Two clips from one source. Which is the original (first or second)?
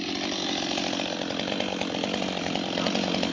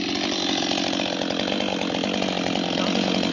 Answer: second